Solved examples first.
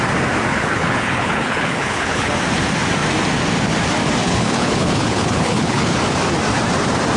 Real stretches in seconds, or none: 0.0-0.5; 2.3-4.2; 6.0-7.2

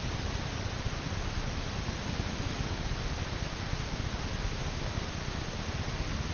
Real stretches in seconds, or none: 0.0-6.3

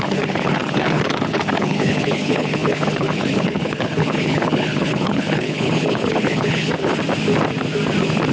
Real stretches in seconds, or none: 6.9-8.3

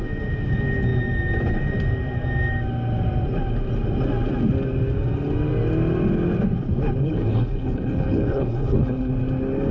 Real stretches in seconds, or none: 0.0-7.0; 9.1-9.7

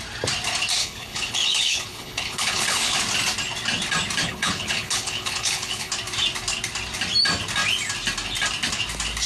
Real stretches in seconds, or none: 0.0-0.8; 3.0-4.2; 5.9-9.3

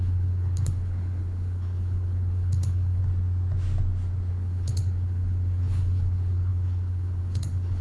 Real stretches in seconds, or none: 3.0-4.3

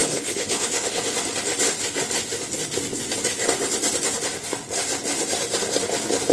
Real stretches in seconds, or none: 1.0-6.3

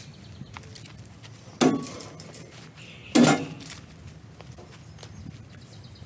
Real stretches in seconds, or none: 0.0-6.1